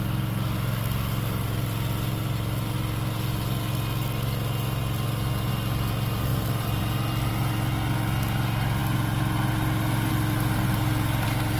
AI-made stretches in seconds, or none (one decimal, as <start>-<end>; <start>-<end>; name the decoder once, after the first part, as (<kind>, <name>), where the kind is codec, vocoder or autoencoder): 6.3-7.3 (vocoder, BigVGAN v2)